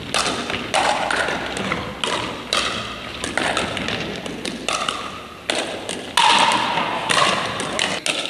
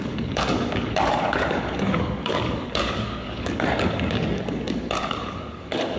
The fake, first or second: second